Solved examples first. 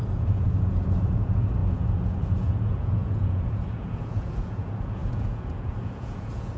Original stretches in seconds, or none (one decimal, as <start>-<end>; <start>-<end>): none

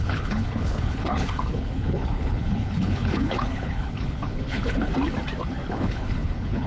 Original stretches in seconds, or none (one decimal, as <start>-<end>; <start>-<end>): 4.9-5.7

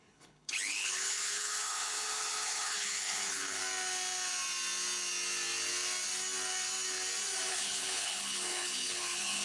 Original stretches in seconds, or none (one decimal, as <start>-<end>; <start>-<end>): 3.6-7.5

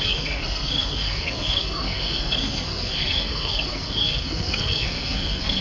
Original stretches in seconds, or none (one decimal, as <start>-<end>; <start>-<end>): none

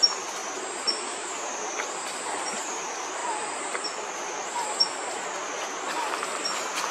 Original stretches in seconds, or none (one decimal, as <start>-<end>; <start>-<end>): 0.0-6.9